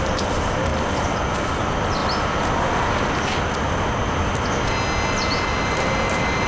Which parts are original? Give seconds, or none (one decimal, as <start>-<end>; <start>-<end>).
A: 0.7-1.6; 2.0-5.1